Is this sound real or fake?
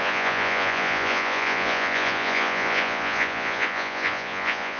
fake